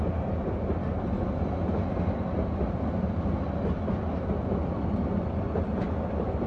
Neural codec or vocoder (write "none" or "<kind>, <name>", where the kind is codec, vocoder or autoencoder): none